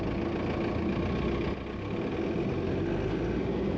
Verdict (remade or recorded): recorded